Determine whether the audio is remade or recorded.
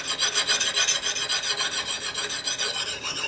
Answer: recorded